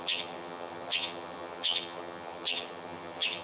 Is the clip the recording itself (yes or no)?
no